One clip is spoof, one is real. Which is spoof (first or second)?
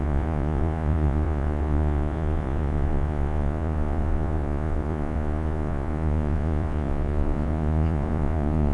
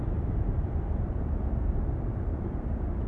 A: first